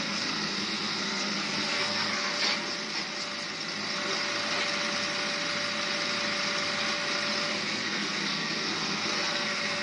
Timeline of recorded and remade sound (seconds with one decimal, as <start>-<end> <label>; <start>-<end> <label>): 0.0-2.3 remade; 2.3-7.5 recorded; 7.5-9.8 remade